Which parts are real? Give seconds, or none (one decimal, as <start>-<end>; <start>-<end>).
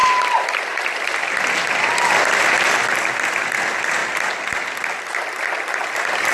0.0-6.3